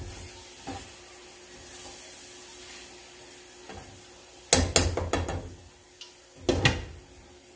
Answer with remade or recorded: recorded